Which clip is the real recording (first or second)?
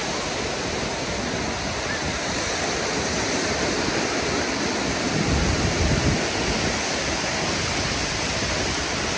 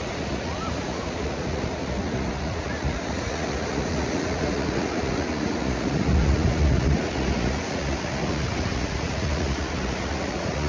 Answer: first